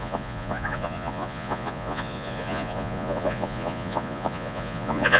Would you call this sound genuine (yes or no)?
no